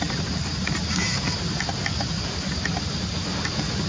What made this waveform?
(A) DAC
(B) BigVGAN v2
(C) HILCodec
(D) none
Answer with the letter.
D